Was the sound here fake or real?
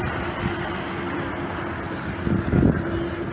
real